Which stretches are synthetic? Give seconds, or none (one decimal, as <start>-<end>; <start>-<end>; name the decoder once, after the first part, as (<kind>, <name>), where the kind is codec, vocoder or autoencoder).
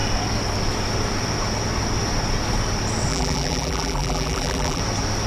3.1-4.8 (vocoder, BigVGAN v2)